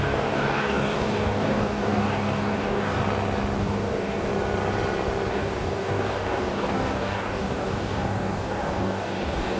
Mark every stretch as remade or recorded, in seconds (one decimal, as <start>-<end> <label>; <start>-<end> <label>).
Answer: 0.0-3.0 remade; 3.0-3.6 recorded; 3.6-4.3 remade; 4.3-5.3 recorded; 5.3-9.6 remade